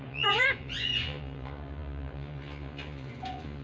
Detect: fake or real fake